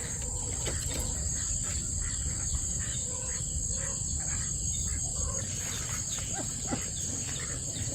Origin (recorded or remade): remade